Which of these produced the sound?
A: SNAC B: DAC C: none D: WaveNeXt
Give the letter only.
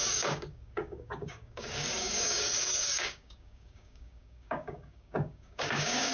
B